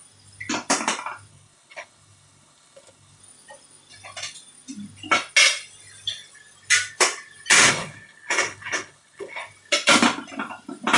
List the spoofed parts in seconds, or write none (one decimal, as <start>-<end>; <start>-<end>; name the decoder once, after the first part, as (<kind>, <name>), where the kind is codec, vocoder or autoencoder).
1.3-3.2 (codec, HILCodec); 7.7-9.4